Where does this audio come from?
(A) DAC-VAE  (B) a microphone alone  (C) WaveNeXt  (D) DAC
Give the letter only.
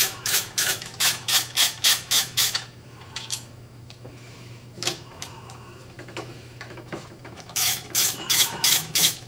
A